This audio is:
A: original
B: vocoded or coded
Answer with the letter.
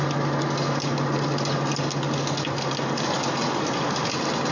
A